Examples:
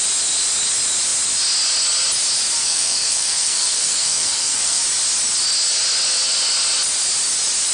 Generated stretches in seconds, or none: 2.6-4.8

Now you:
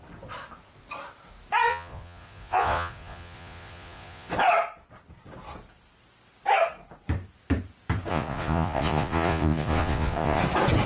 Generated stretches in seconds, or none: 1.7-4.3; 8.1-10.4

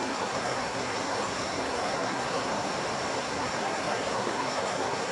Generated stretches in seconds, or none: 0.0-2.7; 3.2-5.1

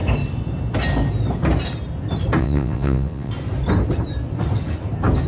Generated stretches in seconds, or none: 2.4-3.3

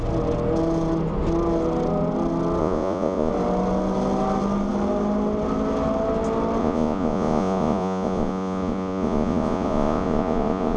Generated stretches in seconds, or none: 2.6-3.3; 6.6-10.8

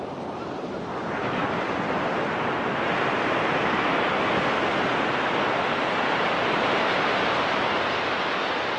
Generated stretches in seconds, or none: none

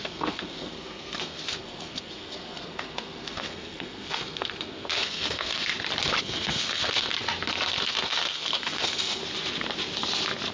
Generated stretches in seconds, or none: 0.0-5.7; 6.2-7.1; 7.8-9.2

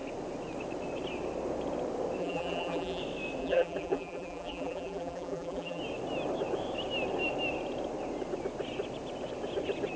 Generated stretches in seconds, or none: 2.2-3.0; 3.4-5.8